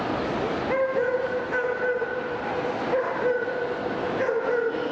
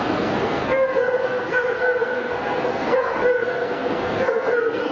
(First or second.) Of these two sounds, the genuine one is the first